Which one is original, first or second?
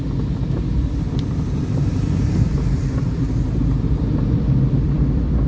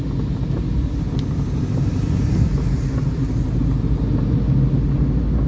second